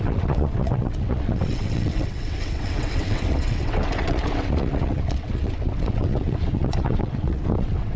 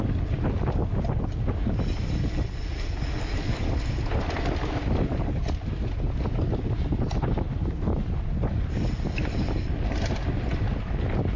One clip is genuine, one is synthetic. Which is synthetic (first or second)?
first